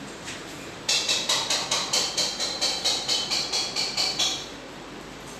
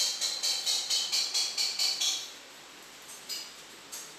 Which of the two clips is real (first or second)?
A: second